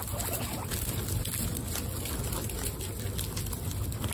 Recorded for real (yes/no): yes